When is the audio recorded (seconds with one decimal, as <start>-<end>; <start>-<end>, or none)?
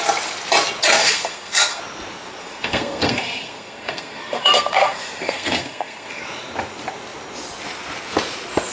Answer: 0.0-1.0; 1.8-2.4; 6.2-8.7